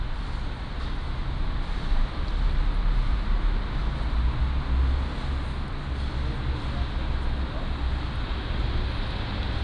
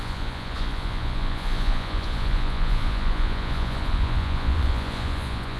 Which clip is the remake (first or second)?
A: second